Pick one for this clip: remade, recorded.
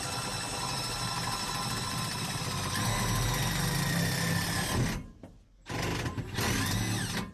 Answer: recorded